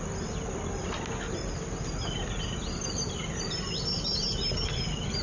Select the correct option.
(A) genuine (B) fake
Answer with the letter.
A